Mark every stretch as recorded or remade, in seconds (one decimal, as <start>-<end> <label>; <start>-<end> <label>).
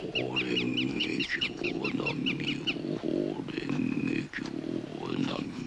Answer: 0.0-0.9 recorded; 0.9-1.8 remade; 1.8-5.1 recorded; 5.1-5.7 remade